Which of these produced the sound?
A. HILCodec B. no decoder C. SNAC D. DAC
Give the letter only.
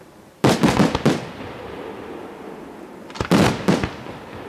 B